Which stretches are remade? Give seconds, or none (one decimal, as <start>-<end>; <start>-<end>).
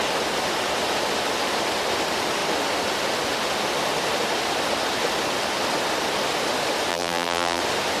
6.9-7.6